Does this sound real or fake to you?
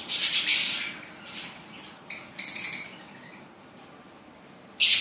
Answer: real